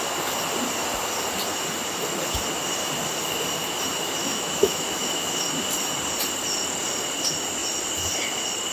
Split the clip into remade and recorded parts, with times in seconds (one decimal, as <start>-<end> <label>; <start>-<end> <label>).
0.0-4.2 recorded; 4.2-5.4 remade; 5.4-8.7 recorded

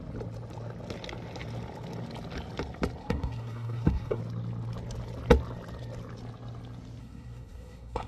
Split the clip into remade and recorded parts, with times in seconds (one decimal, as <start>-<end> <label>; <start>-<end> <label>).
0.0-3.0 recorded; 3.0-4.2 remade; 4.2-7.0 recorded; 7.0-8.1 remade

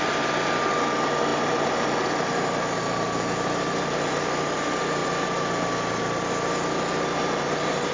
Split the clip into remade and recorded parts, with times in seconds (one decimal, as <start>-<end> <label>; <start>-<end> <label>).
0.0-7.9 recorded